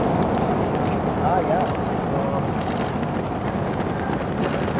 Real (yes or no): yes